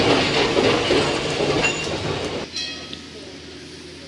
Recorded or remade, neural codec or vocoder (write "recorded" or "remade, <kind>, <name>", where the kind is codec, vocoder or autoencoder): recorded